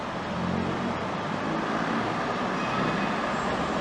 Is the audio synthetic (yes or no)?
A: no